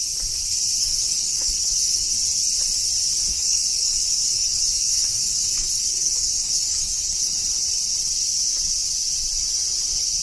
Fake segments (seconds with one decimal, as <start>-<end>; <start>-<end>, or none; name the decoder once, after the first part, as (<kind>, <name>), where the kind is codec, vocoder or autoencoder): 0.8-2.1 (codec, DAC); 3.3-7.3